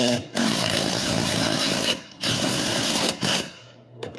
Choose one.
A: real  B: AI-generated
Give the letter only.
B